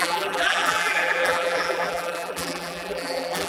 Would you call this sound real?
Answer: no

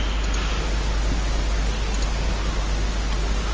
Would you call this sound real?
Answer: yes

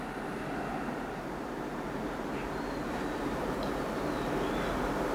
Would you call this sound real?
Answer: no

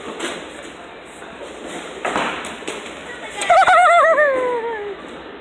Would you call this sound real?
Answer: no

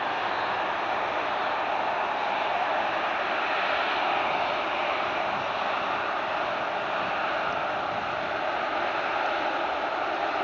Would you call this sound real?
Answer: yes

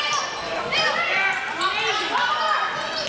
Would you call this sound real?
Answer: yes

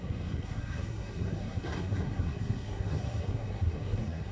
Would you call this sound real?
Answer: no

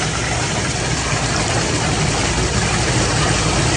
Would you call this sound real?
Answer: yes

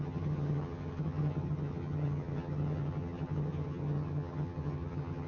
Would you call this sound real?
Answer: no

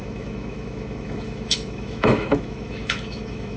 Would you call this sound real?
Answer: no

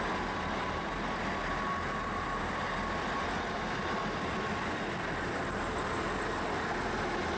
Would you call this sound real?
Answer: yes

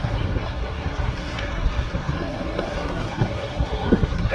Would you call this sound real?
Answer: no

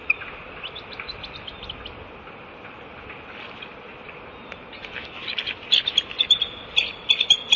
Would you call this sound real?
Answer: yes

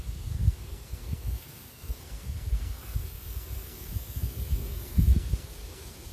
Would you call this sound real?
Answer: no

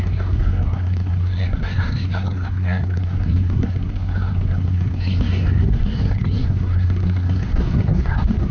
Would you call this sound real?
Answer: no